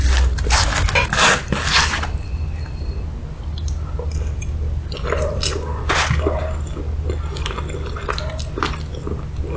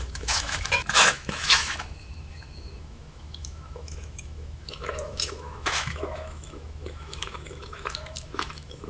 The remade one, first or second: second